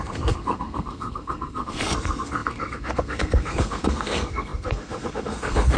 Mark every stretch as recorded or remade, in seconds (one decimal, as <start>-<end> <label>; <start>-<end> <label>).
0.0-5.8 remade